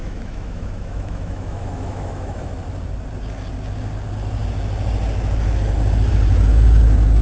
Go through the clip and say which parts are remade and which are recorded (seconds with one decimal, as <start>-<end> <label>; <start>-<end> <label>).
0.0-2.5 remade; 2.5-7.2 recorded